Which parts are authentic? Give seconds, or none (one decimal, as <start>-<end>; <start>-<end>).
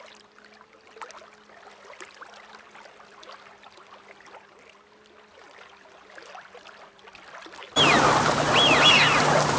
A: 0.0-9.6